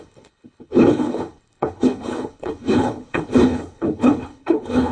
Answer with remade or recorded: remade